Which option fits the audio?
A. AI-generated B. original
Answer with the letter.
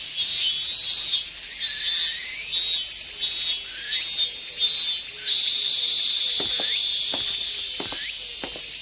B